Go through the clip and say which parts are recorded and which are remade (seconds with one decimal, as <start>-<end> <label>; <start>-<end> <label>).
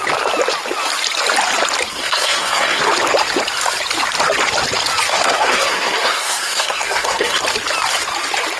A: 0.0-1.9 recorded; 1.9-2.8 remade; 2.8-5.1 recorded; 5.1-7.4 remade; 7.4-8.6 recorded